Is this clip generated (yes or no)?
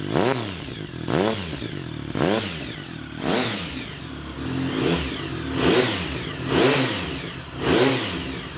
no